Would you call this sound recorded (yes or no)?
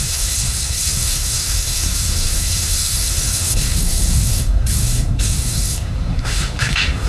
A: no